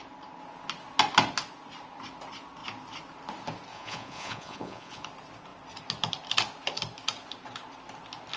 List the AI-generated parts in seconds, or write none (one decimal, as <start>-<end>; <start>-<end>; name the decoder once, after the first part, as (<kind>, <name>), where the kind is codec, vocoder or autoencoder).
3.7-5.0 (vocoder, Vocos)